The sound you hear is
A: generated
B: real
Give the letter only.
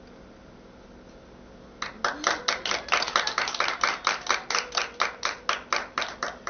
B